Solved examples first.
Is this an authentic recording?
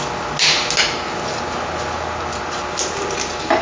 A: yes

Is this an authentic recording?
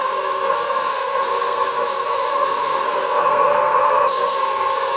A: no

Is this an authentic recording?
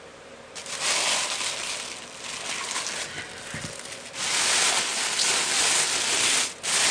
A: yes